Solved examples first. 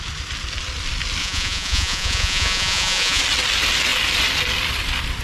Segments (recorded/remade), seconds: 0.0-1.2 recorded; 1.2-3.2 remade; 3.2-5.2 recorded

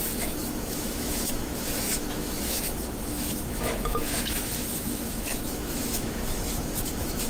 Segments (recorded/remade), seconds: 0.0-7.3 remade

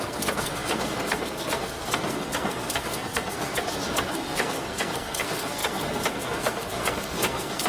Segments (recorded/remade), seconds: 0.0-7.7 remade

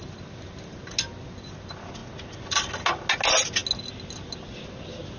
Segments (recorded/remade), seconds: 0.0-5.2 recorded

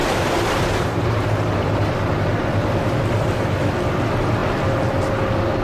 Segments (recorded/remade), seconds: 0.0-3.4 remade; 3.4-5.6 recorded

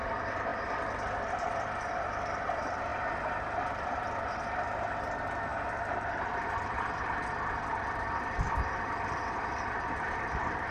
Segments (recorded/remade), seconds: 0.0-2.9 remade; 2.9-3.4 recorded; 3.4-10.7 remade

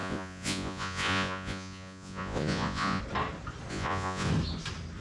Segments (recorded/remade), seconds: 0.0-3.0 remade; 3.0-3.7 recorded; 3.7-4.3 remade; 4.3-5.0 recorded

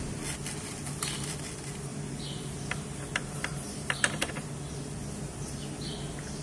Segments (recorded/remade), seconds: 0.0-1.9 recorded; 1.9-4.3 remade; 4.3-6.4 recorded